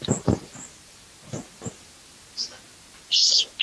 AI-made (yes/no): no